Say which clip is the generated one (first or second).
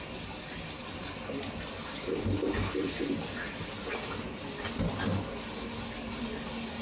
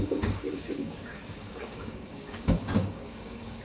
second